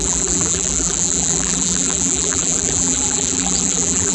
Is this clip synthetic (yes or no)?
yes